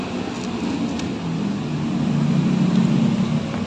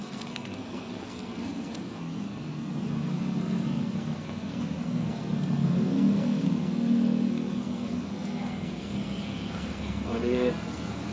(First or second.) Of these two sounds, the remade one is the second